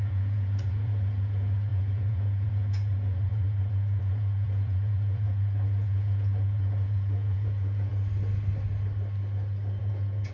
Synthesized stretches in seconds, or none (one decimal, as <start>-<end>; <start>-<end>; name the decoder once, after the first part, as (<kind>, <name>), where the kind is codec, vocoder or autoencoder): 0.0-7.9 (vocoder, Vocos); 9.8-10.3